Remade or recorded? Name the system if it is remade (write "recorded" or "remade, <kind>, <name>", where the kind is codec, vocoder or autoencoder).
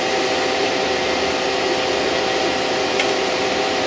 recorded